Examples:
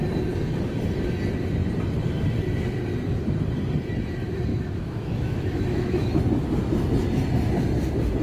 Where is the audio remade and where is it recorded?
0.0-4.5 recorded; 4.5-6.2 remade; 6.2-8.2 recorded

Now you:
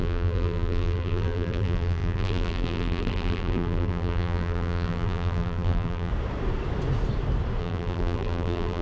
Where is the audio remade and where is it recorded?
0.0-6.1 remade; 6.1-7.6 recorded; 7.6-8.8 remade

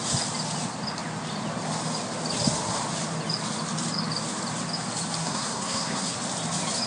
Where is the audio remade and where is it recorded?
0.0-5.2 recorded; 5.2-6.1 remade; 6.1-6.9 recorded

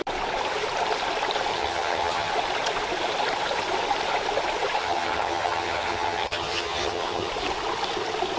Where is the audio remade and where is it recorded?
0.0-1.5 recorded; 1.5-2.3 remade; 2.3-4.8 recorded; 4.8-7.3 remade; 7.3-8.4 recorded